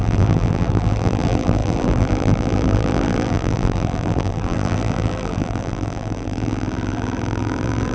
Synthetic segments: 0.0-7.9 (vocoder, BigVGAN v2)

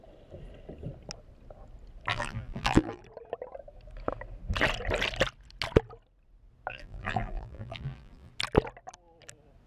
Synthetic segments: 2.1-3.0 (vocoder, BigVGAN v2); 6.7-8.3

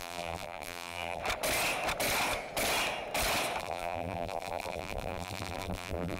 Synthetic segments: 0.0-1.2 (vocoder, BigVGAN v2); 3.6-6.2

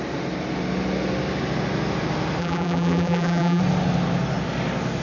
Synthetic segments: 2.4-3.6 (vocoder, BigVGAN v2)